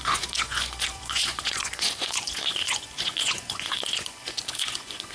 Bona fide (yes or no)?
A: no